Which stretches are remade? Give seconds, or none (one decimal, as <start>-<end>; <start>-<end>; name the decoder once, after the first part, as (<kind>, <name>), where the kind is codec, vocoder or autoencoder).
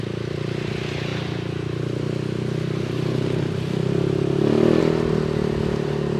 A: none